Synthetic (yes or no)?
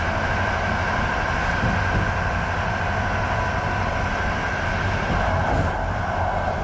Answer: no